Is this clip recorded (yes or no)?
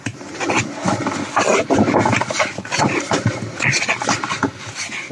yes